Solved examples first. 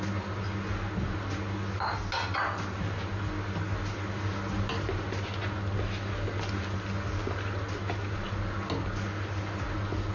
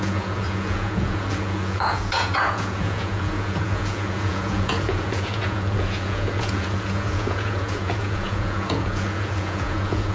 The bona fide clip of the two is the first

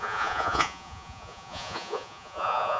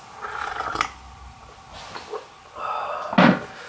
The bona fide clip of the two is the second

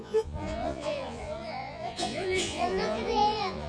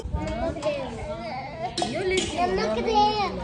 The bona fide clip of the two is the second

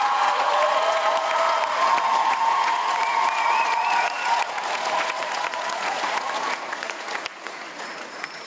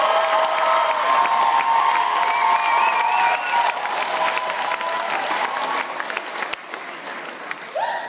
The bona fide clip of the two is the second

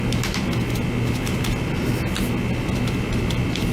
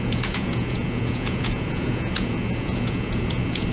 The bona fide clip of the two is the first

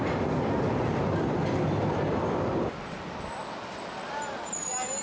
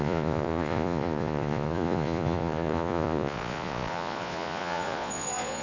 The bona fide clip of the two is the first